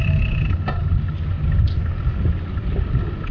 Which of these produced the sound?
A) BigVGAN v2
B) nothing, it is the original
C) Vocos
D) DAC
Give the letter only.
B